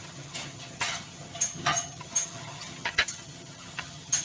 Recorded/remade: remade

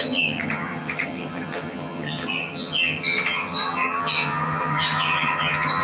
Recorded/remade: remade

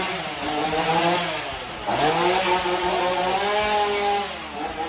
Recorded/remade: recorded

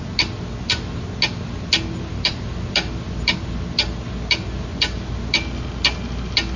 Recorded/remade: recorded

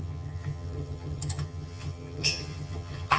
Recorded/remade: remade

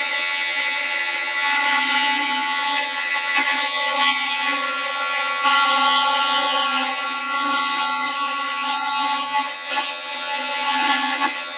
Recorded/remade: remade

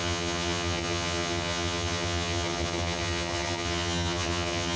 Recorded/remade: remade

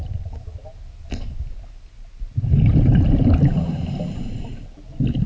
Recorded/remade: recorded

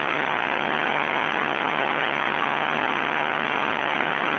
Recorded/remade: remade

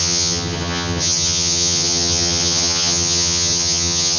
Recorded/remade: remade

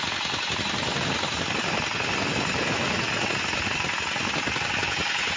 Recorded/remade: recorded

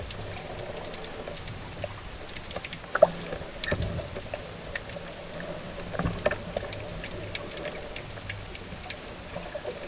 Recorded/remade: recorded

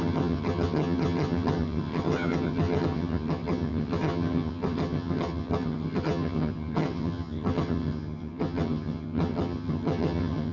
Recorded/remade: remade